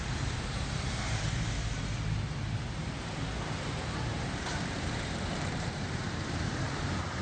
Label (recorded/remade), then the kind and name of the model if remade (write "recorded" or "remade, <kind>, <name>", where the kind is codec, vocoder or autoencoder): remade, vocoder, BigVGAN v2